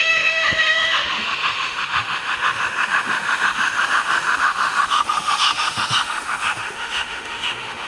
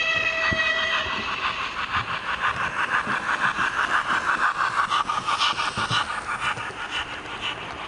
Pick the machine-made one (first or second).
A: first